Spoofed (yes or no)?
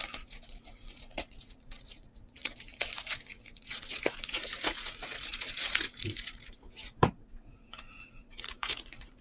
yes